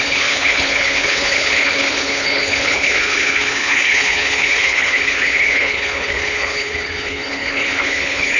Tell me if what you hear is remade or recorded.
remade